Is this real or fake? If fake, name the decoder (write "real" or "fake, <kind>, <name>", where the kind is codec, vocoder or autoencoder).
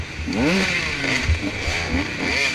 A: real